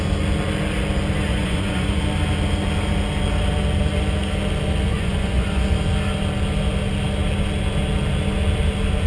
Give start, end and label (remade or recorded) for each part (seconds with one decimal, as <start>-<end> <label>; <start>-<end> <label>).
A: 0.0-1.3 recorded; 1.3-2.0 remade; 2.0-4.9 recorded; 4.9-5.6 remade; 5.6-9.1 recorded